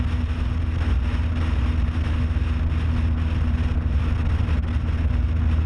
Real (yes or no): yes